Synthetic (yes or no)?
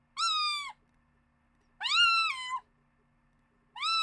no